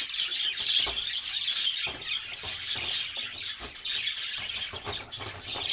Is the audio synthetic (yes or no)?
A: no